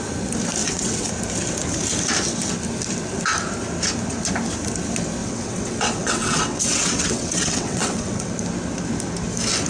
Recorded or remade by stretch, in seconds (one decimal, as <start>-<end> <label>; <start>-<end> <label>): 0.0-0.6 recorded; 0.6-1.1 remade; 1.1-5.2 recorded; 5.2-8.3 remade; 8.3-9.7 recorded

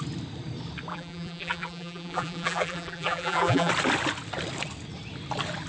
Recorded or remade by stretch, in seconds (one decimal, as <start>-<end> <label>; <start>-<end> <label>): 0.0-0.9 recorded; 0.9-3.7 remade; 3.7-5.7 recorded

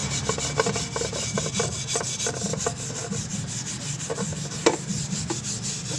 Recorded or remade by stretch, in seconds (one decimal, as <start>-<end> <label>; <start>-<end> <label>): 0.0-4.3 recorded; 4.3-5.3 remade; 5.3-6.0 recorded

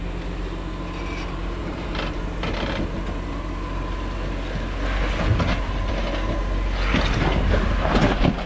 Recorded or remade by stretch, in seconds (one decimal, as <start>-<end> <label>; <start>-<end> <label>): 0.0-1.6 recorded; 1.6-2.8 remade; 2.8-8.5 recorded

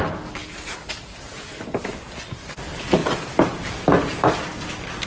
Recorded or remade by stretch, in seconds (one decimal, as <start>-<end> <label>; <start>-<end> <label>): 0.0-5.1 recorded

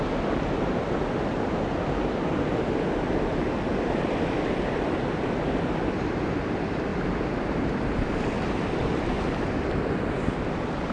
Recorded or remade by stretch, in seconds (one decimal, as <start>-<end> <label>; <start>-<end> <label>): 0.0-10.9 recorded